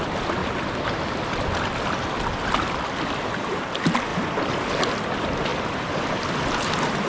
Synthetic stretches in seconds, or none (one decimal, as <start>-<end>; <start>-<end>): 0.4-2.8; 4.1-4.8; 5.5-6.3